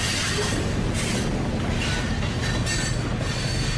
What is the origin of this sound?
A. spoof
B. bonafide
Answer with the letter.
B